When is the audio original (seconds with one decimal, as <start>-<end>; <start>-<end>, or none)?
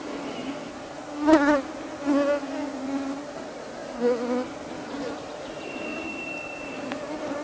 0.0-7.4